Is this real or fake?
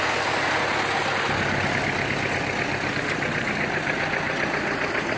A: real